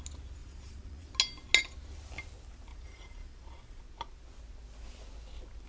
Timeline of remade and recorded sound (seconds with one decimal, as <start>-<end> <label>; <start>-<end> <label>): 0.0-0.4 recorded; 0.4-1.1 remade; 1.1-2.7 recorded; 2.7-3.8 remade; 3.8-5.7 recorded